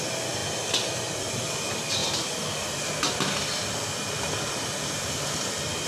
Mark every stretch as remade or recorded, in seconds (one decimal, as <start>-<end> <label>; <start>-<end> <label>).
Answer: 0.0-5.9 recorded